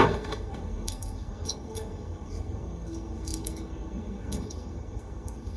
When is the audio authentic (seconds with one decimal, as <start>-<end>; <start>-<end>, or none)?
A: none